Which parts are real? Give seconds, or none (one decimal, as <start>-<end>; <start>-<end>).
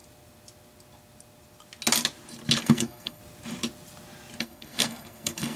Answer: 0.0-2.6; 3.2-4.4